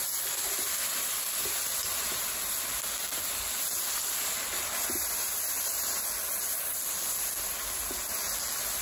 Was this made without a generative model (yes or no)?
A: yes